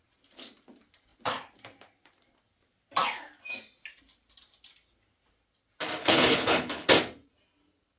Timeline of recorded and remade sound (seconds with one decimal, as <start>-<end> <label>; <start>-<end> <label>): 0.0-6.0 recorded; 6.0-6.9 remade; 6.9-8.0 recorded